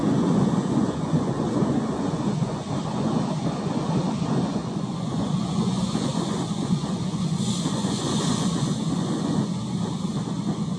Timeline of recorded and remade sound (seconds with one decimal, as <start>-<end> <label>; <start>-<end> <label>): 0.0-9.6 remade; 9.6-10.4 recorded; 10.4-10.8 remade